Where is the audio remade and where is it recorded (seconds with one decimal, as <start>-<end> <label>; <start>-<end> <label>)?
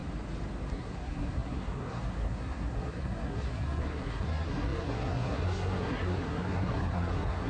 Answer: 0.0-0.7 recorded; 0.7-7.5 remade